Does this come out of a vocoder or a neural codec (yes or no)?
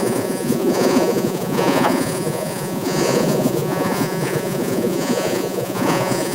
yes